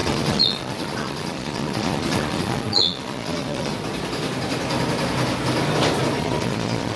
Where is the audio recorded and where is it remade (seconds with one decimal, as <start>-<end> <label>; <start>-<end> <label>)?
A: 0.0-3.7 remade; 3.7-6.2 recorded; 6.2-7.0 remade

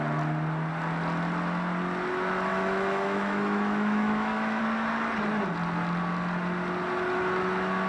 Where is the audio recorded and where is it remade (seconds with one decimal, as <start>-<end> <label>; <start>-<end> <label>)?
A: 0.0-2.5 recorded; 2.5-4.6 remade; 4.6-7.9 recorded